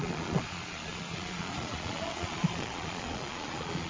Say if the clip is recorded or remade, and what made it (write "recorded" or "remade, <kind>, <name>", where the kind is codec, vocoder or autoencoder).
remade, vocoder, Vocos